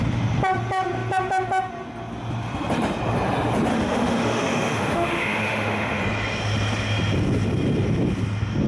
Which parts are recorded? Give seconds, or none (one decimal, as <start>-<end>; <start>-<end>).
0.0-3.7; 6.0-8.7